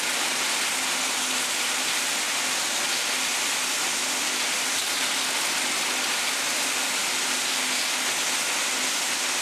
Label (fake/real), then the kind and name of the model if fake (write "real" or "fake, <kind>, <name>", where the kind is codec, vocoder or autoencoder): real